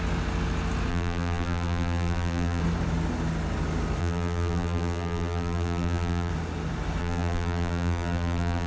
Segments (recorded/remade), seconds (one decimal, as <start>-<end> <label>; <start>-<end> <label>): 0.0-0.9 recorded; 0.9-2.6 remade; 2.6-4.0 recorded; 4.0-6.3 remade; 6.3-7.0 recorded; 7.0-8.7 remade